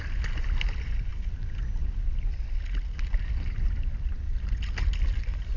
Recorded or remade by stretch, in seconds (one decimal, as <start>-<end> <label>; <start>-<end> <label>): 0.0-5.6 recorded